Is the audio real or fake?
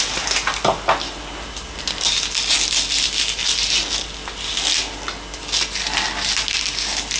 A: real